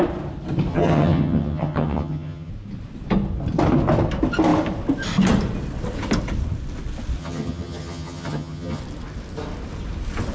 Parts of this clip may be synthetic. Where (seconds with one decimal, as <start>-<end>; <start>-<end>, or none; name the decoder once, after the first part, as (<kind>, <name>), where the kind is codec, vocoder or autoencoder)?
0.7-2.5 (vocoder, HiFi-GAN); 7.2-8.8